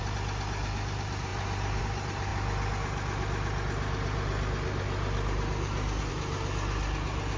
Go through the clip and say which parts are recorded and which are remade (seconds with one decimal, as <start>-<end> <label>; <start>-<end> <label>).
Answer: 0.0-7.4 recorded

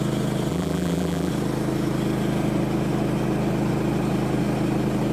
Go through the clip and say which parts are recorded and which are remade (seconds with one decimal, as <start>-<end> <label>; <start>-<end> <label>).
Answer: 0.0-0.5 recorded; 0.5-1.3 remade; 1.3-5.1 recorded